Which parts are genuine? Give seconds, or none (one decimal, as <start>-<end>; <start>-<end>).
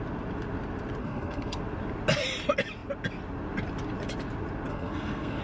0.0-1.0; 1.6-4.7